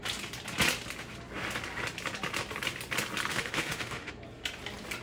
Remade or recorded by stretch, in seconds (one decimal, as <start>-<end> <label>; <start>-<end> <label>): 0.0-3.3 recorded; 3.3-4.1 remade; 4.1-5.0 recorded